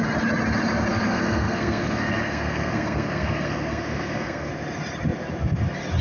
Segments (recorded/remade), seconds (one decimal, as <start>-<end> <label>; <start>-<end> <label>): 0.0-0.9 recorded; 0.9-4.5 remade; 4.5-6.0 recorded